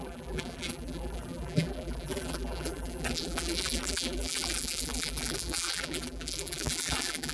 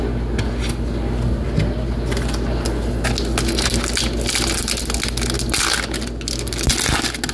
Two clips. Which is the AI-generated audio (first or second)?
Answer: first